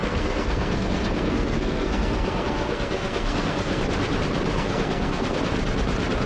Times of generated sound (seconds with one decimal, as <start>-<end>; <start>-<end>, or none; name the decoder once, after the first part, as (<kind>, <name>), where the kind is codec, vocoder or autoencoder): 0.0-3.8 (codec, SNAC); 4.5-5.4